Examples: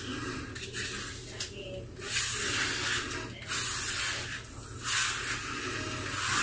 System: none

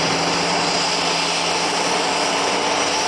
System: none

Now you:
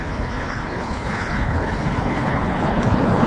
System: codec, HILCodec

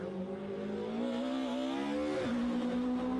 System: none